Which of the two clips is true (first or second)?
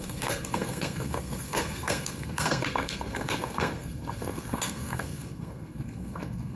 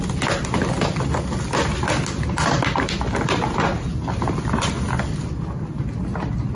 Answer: second